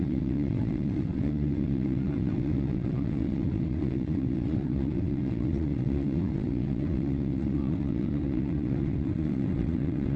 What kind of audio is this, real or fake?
fake